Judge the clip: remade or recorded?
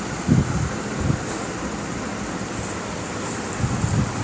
recorded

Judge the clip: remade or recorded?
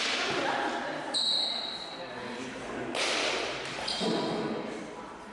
recorded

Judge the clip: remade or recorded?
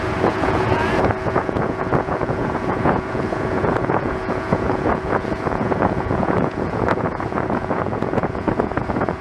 remade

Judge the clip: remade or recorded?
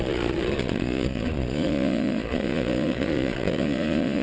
remade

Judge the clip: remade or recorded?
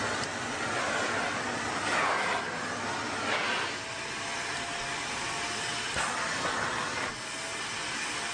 recorded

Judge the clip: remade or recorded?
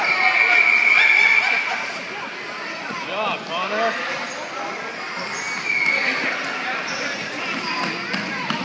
recorded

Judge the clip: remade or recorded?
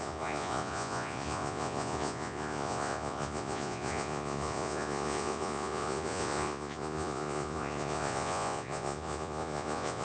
remade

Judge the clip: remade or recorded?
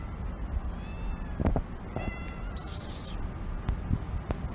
recorded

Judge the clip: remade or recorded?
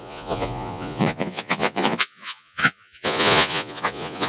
remade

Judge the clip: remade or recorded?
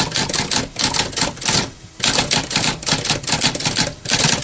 recorded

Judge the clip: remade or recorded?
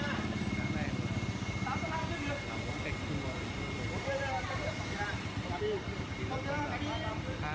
recorded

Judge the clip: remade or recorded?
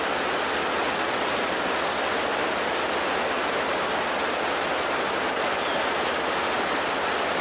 recorded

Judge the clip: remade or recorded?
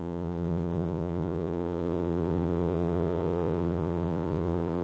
remade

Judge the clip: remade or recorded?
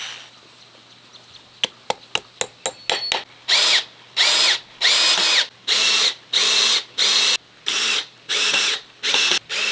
recorded